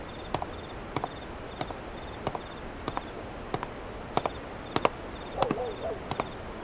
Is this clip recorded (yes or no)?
yes